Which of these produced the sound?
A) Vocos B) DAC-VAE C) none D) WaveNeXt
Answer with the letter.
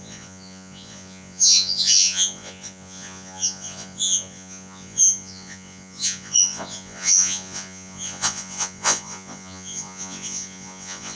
A